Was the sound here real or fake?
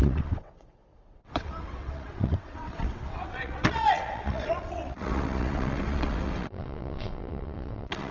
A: fake